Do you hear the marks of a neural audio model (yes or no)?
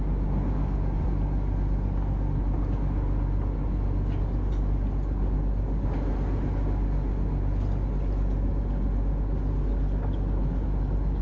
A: no